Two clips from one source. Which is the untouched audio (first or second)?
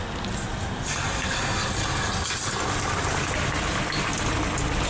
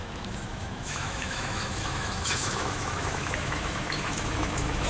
first